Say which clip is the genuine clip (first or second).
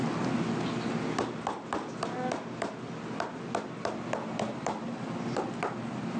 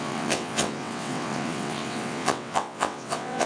first